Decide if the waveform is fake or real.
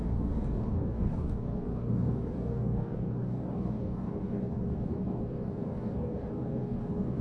fake